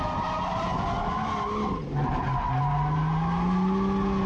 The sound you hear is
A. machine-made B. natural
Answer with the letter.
B